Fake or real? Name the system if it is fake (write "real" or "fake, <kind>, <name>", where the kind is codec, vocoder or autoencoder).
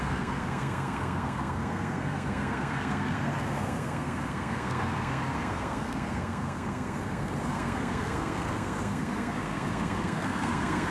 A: fake, codec, SNAC